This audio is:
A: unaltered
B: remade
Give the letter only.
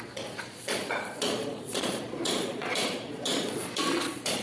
B